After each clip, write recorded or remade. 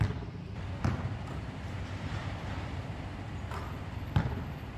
remade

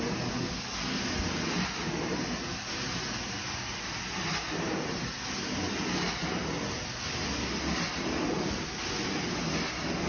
recorded